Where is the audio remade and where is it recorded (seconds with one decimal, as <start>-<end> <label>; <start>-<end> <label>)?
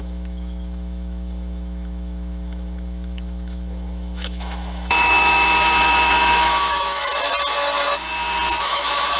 0.0-7.0 remade; 7.0-8.6 recorded; 8.6-9.2 remade